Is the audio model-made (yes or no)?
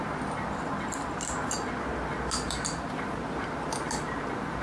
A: no